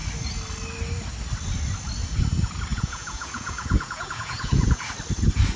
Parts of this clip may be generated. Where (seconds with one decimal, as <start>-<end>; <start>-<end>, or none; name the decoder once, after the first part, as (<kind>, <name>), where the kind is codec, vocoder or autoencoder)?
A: 2.7-4.9 (vocoder, Vocos)